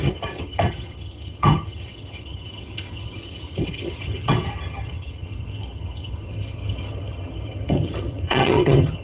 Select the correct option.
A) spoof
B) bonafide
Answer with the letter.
A